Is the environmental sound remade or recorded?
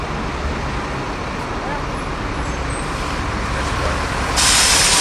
recorded